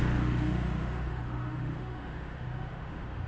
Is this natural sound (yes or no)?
no